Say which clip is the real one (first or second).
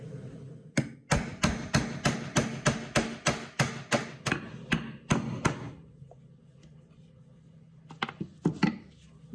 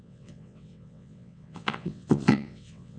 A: first